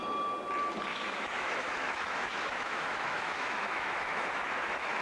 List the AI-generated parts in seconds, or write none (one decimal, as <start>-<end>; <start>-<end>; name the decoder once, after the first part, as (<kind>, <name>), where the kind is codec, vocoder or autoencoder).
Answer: 0.9-5.0 (autoencoder, DAC-VAE)